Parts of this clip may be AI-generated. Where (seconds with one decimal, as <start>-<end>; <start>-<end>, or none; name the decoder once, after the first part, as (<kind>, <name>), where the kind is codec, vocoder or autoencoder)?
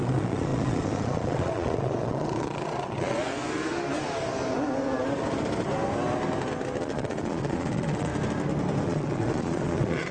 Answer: 0.0-3.3 (vocoder, Vocos); 6.8-8.1; 8.8-10.1